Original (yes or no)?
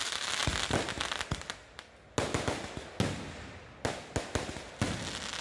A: yes